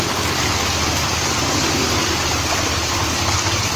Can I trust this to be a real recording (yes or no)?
yes